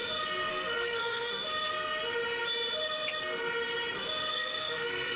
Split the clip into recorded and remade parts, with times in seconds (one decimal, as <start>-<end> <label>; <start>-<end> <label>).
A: 0.0-0.5 recorded; 0.5-1.3 remade; 1.3-4.3 recorded; 4.3-5.2 remade